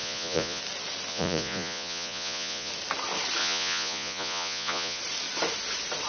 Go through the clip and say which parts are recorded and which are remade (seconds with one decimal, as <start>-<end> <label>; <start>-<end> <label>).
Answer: 0.0-0.6 remade; 0.6-1.1 recorded; 1.1-2.7 remade; 2.7-3.4 recorded; 3.4-5.0 remade; 5.0-6.1 recorded